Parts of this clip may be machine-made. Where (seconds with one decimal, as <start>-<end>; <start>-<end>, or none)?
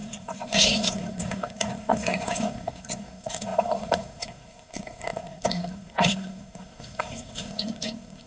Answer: 0.0-8.3